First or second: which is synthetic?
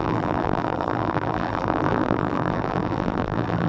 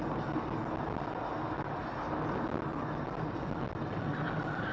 first